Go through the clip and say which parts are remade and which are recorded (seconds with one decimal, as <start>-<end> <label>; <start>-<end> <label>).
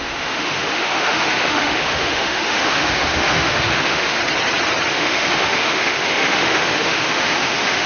0.0-4.2 remade; 4.2-4.9 recorded; 4.9-7.9 remade